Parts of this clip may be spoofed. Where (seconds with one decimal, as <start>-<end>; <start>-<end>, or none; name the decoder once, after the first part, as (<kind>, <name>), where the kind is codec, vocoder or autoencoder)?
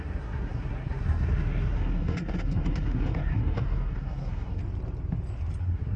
0.0-4.6 (codec, SNAC); 5.6-6.0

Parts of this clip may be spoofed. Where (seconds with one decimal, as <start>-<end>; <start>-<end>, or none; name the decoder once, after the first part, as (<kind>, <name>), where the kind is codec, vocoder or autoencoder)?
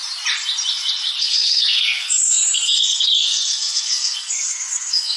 1.2-5.2 (codec, SNAC)